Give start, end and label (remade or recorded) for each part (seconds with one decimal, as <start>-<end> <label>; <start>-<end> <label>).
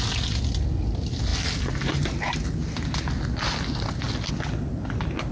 0.0-5.3 recorded